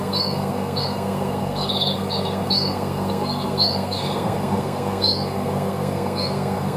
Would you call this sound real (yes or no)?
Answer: no